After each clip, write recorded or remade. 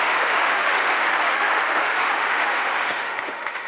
remade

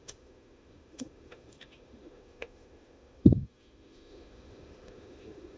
remade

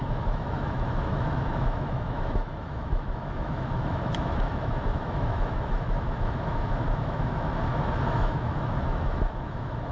remade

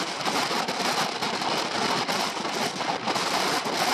recorded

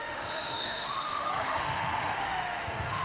remade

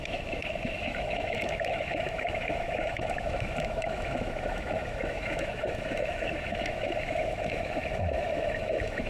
remade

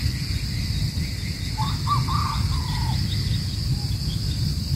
recorded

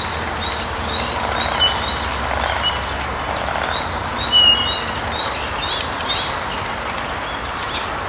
recorded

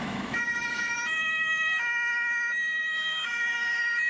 remade